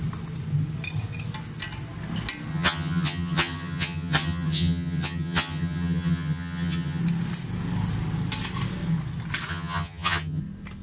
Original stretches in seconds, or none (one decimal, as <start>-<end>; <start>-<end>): 0.0-2.5; 7.0-9.5; 10.4-10.8

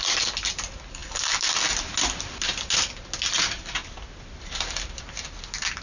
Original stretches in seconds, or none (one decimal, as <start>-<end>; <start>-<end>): 0.0-5.8